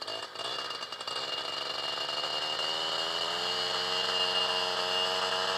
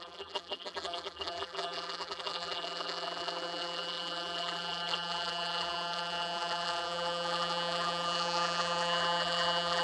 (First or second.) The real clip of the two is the first